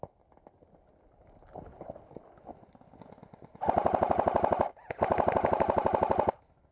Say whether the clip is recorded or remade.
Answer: recorded